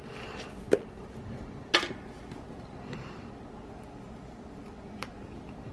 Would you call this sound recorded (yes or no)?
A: yes